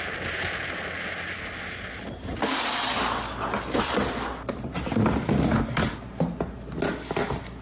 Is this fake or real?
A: real